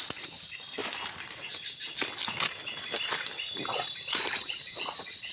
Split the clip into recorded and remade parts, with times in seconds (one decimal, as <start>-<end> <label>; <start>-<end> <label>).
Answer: 0.0-0.8 remade; 0.8-4.0 recorded; 4.0-5.3 remade